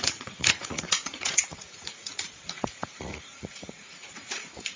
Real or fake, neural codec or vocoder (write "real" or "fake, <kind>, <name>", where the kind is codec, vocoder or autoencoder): fake, vocoder, Vocos